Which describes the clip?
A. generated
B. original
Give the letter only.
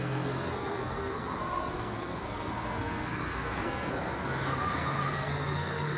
A